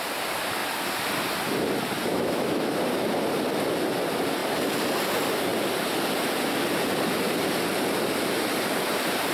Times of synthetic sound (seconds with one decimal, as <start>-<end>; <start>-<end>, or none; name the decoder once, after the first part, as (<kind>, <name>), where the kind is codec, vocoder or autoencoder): 2.1-2.7 (autoencoder, DAC-VAE)